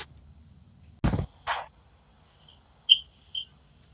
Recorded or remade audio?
recorded